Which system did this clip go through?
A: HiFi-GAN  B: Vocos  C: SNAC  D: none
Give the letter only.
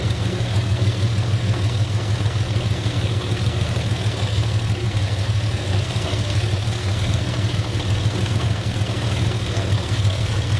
C